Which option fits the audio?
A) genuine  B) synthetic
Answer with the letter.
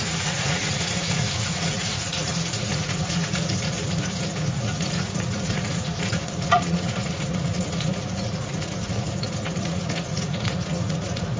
B